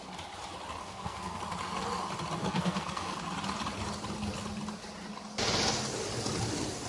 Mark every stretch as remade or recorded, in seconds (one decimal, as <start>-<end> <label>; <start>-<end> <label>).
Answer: 0.0-0.8 recorded; 0.8-1.4 remade; 1.4-2.4 recorded; 2.4-3.2 remade; 3.2-6.9 recorded